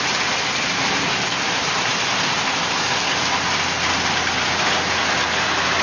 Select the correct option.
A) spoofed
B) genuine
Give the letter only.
B